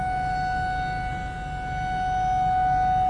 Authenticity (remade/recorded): recorded